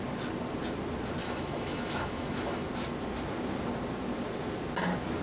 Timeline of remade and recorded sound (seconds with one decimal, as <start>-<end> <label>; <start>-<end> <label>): 0.0-1.2 recorded; 1.2-2.7 remade; 2.7-5.2 recorded